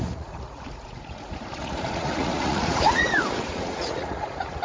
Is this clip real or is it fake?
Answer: fake